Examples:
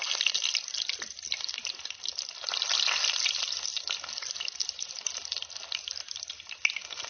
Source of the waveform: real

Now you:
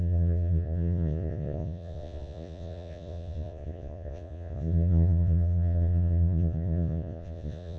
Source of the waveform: fake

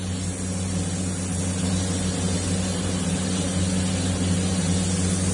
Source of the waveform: real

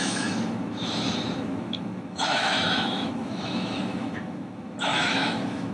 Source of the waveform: fake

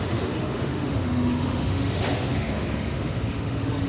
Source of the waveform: fake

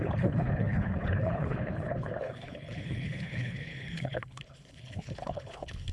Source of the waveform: fake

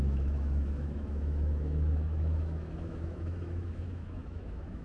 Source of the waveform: fake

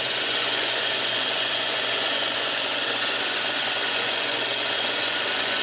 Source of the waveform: fake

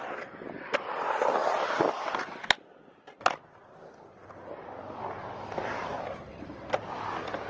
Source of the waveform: real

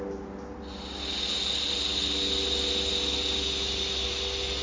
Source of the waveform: real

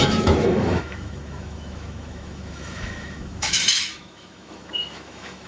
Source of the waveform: fake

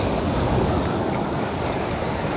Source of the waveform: fake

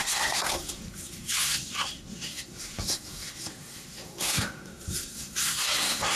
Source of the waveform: fake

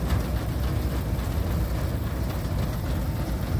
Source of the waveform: real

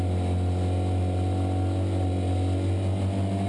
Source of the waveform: real